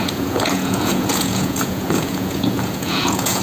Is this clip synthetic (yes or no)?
yes